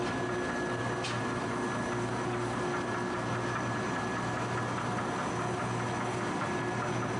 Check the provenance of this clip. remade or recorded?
recorded